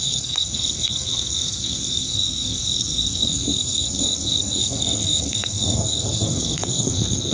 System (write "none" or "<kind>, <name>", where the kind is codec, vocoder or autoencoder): codec, SNAC